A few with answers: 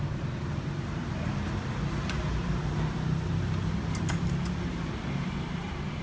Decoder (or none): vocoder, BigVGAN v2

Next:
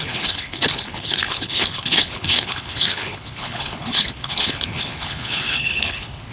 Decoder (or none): codec, HILCodec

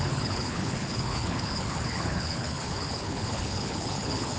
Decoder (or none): codec, HILCodec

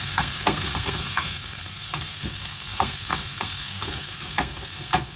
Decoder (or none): codec, SNAC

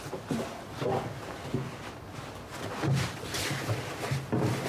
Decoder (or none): none